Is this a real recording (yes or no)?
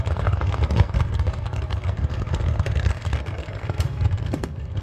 no